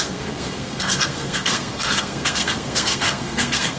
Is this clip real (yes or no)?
no